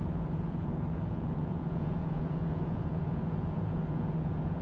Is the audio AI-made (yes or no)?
yes